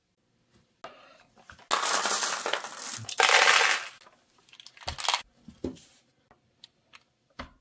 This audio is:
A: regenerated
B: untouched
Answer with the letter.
B